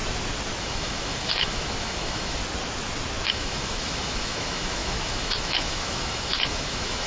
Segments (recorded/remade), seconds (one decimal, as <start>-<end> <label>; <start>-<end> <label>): 0.0-0.6 recorded; 0.6-2.4 remade; 2.4-3.3 recorded; 3.3-7.1 remade